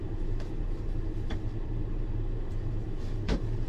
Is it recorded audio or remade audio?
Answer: remade